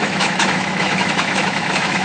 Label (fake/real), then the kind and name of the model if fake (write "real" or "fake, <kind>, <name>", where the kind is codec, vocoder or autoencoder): fake, autoencoder, DAC-VAE